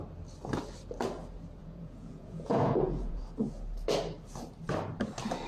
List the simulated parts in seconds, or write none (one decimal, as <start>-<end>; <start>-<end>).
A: 1.6-3.2